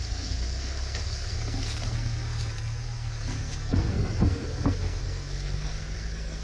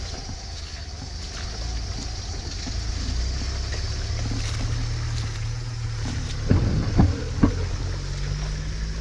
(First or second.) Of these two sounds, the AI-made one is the first